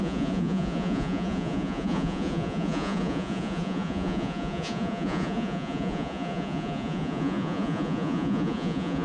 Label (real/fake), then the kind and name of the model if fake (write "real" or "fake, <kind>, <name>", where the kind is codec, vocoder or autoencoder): fake, vocoder, Vocos